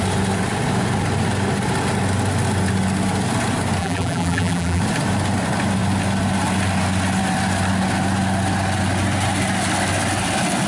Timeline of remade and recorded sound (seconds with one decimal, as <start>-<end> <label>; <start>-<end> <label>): 0.0-3.8 recorded; 3.8-4.8 remade; 4.8-10.7 recorded